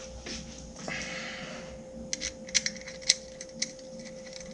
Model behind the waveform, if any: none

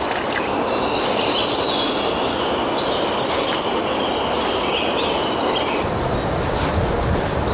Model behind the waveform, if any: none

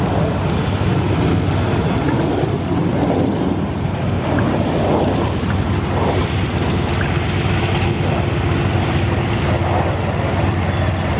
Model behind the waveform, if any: none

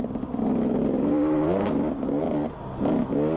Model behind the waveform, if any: none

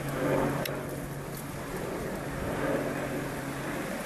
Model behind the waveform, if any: none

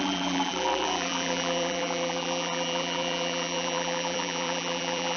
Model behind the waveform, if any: vocoder, BigVGAN v2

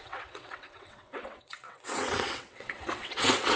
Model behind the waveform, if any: vocoder, WaveNeXt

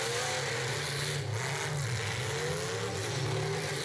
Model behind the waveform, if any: none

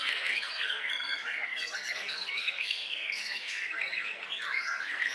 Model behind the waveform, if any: codec, SNAC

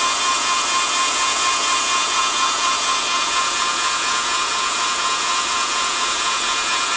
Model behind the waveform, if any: vocoder, Vocos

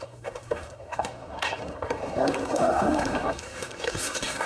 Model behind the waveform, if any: codec, SNAC